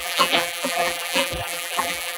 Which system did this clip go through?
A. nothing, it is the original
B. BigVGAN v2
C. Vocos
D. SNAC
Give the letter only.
B